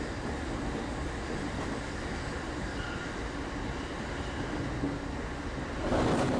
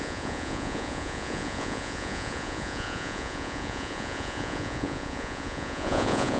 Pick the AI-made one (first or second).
second